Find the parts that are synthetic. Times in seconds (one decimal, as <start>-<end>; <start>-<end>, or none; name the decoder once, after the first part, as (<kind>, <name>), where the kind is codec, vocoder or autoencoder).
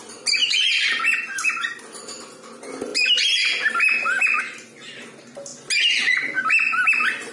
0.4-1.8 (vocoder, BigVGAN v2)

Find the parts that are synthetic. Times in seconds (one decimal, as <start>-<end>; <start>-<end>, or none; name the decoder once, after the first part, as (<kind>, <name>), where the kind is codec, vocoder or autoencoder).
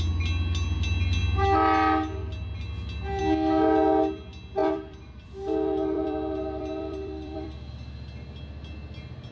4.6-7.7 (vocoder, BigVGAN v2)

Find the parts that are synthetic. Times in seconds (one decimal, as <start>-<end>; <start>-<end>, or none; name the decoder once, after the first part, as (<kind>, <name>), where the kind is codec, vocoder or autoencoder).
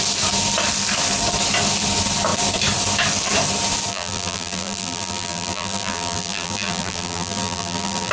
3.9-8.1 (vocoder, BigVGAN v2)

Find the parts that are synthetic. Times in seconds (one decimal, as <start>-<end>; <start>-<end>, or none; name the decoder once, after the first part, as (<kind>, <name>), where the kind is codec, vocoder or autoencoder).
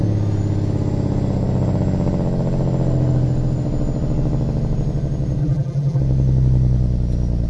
5.4-6.0 (vocoder, BigVGAN v2)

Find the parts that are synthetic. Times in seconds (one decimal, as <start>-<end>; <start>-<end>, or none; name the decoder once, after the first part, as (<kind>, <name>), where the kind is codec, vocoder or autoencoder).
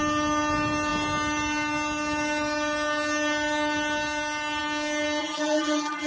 5.2-6.1 (vocoder, BigVGAN v2)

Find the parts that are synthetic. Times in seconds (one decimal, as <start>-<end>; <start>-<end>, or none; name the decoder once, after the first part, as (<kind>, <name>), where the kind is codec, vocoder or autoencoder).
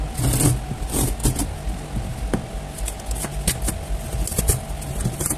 none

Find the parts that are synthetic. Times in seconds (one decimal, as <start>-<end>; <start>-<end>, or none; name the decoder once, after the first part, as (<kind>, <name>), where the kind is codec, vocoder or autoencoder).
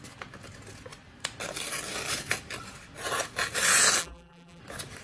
4.0-4.6 (vocoder, BigVGAN v2)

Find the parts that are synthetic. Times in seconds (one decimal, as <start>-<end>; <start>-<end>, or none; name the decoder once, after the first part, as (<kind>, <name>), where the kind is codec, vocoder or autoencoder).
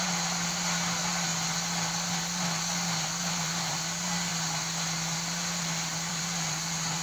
0.0-1.3 (vocoder, BigVGAN v2); 3.3-4.3; 5.2-7.0